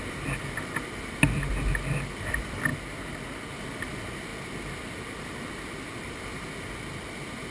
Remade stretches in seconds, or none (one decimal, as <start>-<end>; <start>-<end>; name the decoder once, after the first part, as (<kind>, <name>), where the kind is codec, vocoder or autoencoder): 0.0-2.7 (vocoder, BigVGAN v2); 3.5-4.3; 5.1-7.5